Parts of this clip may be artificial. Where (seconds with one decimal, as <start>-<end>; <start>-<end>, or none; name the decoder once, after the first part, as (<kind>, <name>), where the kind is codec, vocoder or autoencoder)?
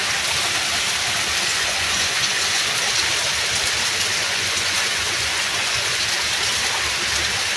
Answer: 1.5-2.7 (vocoder, Vocos); 4.2-6.0